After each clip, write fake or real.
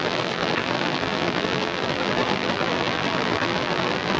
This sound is fake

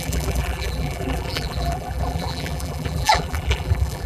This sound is fake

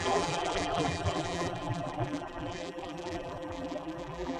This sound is fake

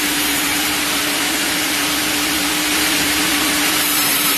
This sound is fake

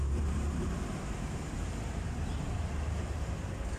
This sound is fake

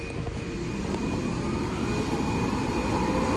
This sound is real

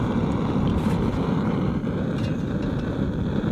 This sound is fake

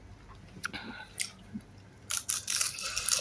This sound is real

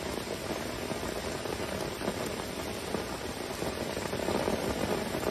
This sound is real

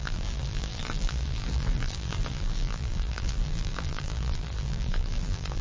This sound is fake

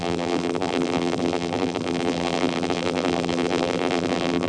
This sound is fake